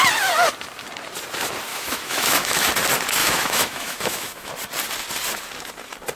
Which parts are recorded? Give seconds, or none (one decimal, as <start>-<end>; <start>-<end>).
0.0-1.7; 2.7-3.2; 4.5-6.2